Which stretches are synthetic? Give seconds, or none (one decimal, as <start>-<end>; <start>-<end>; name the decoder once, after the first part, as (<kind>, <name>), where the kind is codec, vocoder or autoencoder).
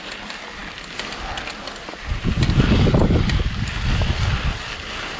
none